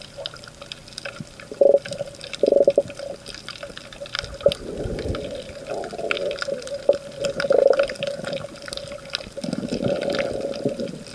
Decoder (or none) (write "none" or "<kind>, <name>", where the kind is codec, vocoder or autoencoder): none